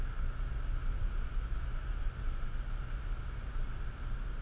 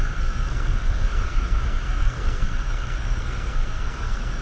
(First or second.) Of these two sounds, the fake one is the second